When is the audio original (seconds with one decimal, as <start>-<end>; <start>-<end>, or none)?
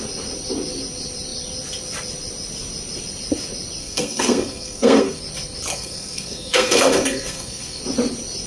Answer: 0.0-3.8; 5.2-5.7; 7.8-8.5